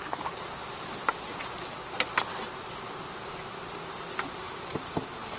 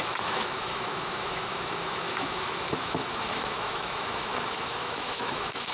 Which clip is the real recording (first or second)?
first